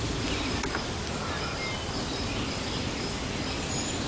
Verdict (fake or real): real